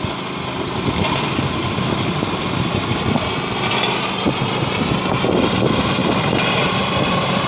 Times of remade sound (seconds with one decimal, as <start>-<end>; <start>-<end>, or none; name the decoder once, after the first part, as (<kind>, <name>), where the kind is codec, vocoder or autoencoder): 6.0-7.5 (vocoder, BigVGAN v2)